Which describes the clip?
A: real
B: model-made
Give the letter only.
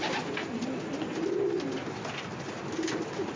A